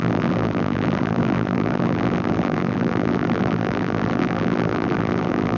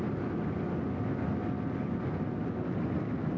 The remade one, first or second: first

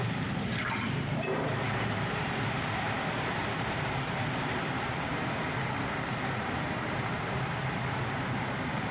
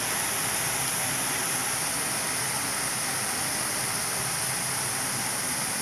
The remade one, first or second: first